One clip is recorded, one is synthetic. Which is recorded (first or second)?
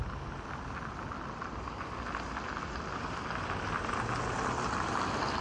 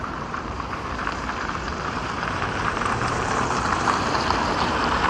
first